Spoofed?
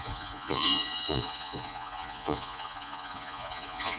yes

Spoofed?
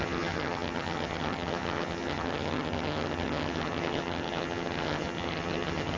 yes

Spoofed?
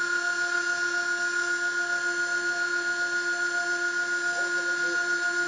no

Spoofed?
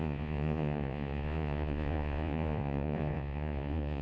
yes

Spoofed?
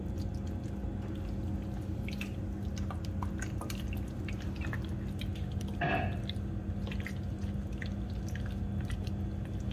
no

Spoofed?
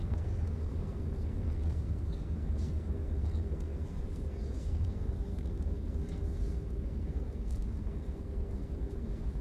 yes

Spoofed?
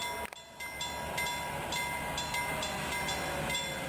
no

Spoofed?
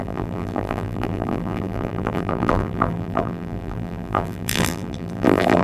yes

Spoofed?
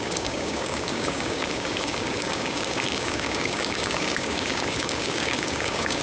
yes